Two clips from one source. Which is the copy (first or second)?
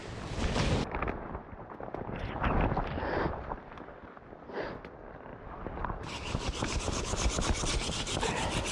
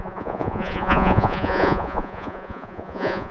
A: second